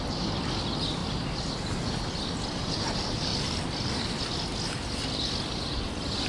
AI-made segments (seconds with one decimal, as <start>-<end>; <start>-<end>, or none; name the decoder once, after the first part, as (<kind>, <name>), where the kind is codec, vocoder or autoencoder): none